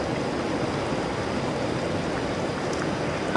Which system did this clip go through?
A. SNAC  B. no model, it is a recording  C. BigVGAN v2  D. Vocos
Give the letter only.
B